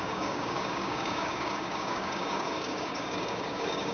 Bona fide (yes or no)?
no